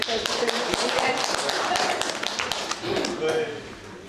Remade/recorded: recorded